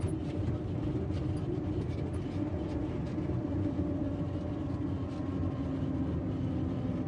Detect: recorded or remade recorded